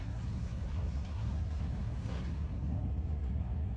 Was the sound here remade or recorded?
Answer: remade